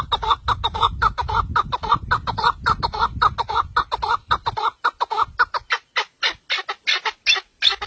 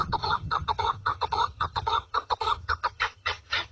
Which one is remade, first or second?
second